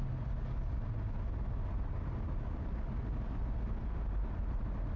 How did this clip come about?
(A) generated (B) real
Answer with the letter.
B